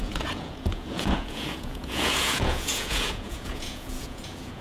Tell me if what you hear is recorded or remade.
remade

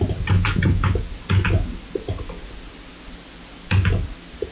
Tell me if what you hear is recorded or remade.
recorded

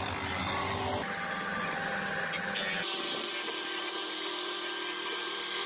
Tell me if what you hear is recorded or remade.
recorded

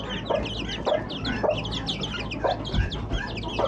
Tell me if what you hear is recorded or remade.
recorded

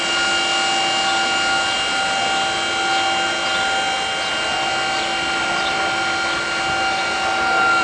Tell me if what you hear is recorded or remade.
recorded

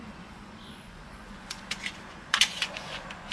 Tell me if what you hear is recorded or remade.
remade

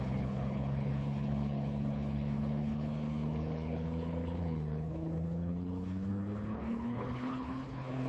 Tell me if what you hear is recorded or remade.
remade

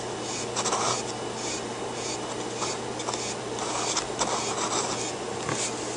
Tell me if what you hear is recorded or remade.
recorded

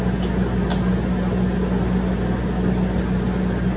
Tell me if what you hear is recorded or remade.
recorded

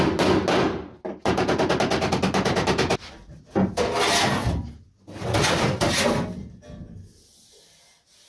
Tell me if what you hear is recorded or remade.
recorded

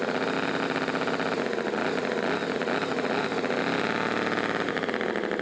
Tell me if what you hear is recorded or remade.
recorded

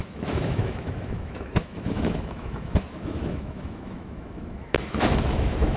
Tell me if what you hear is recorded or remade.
remade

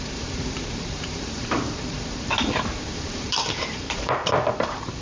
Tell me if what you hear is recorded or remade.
remade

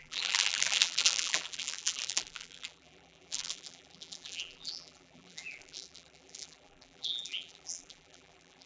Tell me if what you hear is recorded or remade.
remade